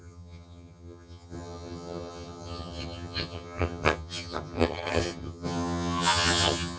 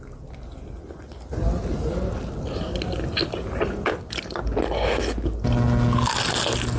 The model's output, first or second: first